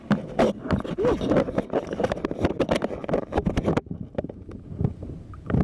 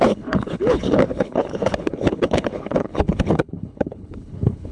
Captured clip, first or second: first